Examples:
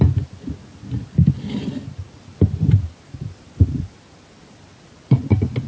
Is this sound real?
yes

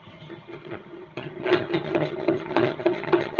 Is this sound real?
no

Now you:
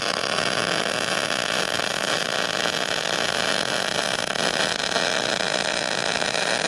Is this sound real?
yes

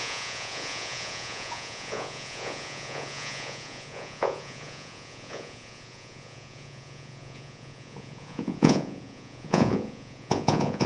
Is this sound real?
no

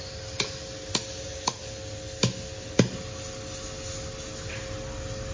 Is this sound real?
yes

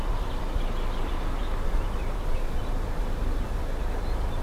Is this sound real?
no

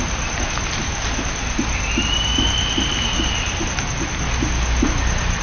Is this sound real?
yes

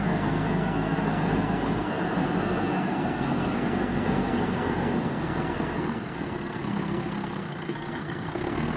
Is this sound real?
no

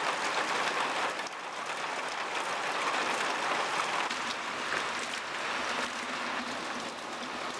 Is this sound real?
yes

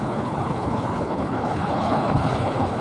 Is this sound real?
no